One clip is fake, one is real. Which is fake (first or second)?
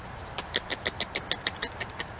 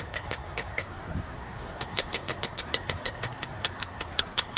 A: second